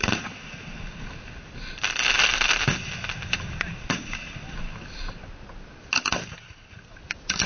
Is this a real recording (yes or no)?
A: yes